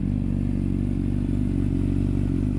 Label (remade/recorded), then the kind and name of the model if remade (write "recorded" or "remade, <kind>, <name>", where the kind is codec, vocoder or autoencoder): recorded